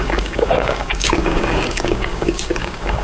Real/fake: fake